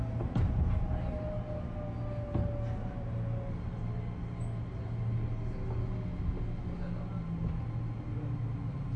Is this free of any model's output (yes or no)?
yes